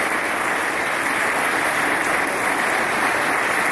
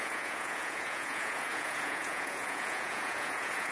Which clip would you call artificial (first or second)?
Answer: second